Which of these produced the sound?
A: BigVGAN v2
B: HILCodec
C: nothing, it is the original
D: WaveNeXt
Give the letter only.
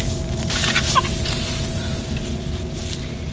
C